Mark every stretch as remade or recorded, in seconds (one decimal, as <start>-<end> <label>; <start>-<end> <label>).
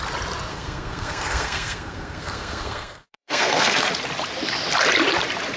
0.0-0.5 recorded; 0.5-3.9 remade; 3.9-5.6 recorded